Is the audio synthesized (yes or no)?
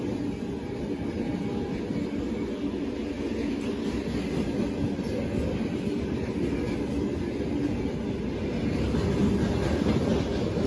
no